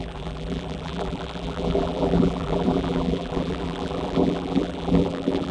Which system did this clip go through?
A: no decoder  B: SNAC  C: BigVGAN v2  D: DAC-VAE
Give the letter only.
C